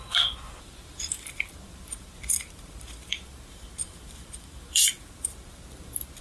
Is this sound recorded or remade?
remade